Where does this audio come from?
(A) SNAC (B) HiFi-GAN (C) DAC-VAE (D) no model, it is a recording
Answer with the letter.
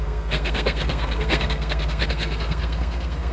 A